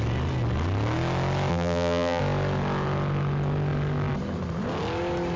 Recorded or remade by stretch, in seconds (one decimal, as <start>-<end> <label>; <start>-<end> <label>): 0.0-1.5 recorded; 1.5-2.2 remade; 2.2-5.4 recorded